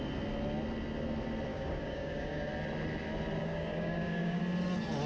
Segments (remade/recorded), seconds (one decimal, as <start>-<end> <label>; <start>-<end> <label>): 0.0-1.5 recorded; 1.5-2.5 remade; 2.5-3.4 recorded; 3.4-4.4 remade; 4.4-5.1 recorded